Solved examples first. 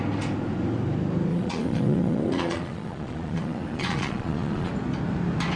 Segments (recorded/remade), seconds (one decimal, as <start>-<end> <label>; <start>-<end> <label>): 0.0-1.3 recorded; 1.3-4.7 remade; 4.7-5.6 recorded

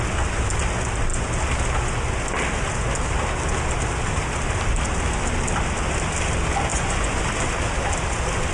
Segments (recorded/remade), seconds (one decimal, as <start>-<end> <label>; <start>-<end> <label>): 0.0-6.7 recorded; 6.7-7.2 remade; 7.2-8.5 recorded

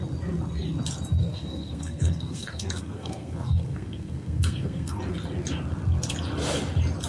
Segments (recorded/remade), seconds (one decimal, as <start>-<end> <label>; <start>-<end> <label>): 0.0-1.2 recorded; 1.2-5.0 remade; 5.0-7.1 recorded